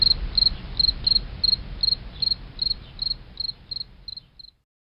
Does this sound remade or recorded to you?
recorded